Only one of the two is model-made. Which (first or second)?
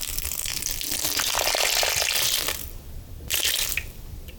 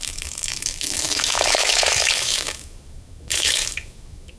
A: second